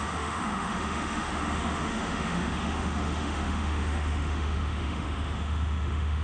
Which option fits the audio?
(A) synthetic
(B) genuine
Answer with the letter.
A